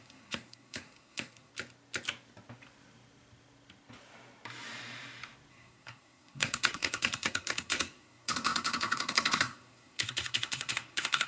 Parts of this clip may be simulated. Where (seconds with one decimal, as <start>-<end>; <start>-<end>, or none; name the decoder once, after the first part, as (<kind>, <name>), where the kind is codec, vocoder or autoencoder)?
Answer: 0.0-1.5 (codec, SNAC); 5.5-11.3